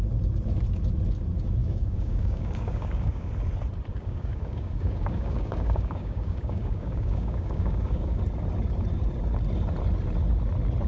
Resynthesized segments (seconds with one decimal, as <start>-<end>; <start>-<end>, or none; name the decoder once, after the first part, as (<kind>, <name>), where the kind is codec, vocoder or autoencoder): 1.6-3.3 (codec, DAC); 3.9-8.2